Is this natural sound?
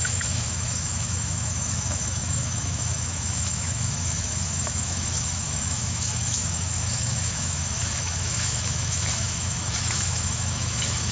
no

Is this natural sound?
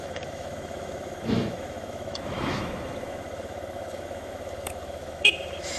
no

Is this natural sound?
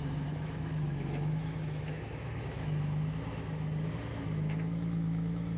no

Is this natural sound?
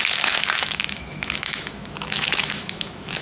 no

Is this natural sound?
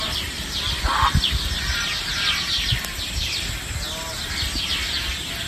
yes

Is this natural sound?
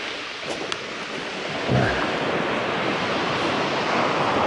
yes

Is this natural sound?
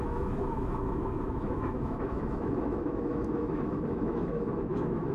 no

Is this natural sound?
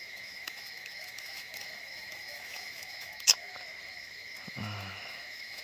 no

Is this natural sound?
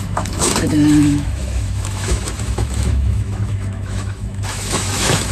no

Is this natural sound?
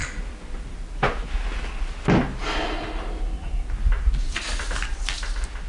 yes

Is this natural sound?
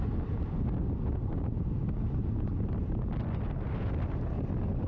yes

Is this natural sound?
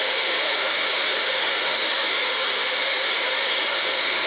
no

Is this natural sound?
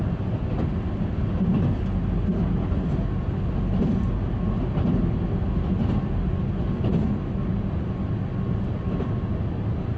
yes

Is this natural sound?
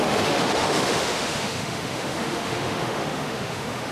no